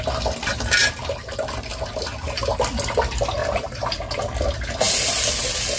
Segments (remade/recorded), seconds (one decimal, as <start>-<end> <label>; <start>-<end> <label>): 0.0-0.8 recorded; 0.8-2.5 remade; 2.5-3.4 recorded; 3.4-3.9 remade; 3.9-5.8 recorded

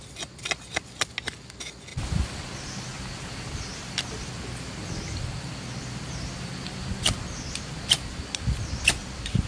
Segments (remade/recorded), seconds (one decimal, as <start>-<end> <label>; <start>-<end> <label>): 0.0-9.5 recorded

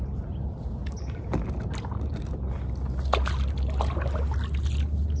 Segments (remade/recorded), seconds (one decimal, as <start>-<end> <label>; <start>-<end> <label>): 0.0-5.2 recorded

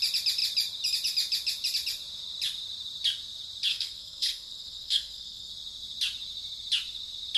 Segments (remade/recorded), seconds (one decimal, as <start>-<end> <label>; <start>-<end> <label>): 0.0-3.7 recorded; 3.7-5.5 remade; 5.5-7.4 recorded

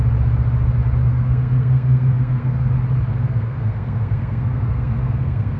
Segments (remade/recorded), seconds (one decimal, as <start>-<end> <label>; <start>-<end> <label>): 0.0-1.1 recorded; 1.1-2.7 remade; 2.7-3.1 recorded; 3.1-5.6 remade